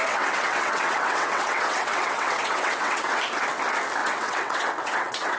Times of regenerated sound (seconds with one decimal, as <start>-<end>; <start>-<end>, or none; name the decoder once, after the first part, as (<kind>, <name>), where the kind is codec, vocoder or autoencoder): 0.0-3.2 (vocoder, WaveNeXt); 4.0-5.4